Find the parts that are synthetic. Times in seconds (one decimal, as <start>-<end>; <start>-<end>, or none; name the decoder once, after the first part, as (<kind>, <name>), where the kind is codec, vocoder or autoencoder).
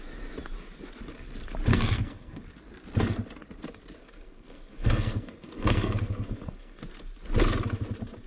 1.7-2.4 (codec, SNAC); 4.0-6.8